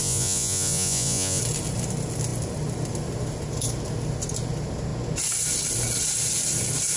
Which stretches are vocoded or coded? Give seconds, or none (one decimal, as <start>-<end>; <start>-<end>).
0.0-1.4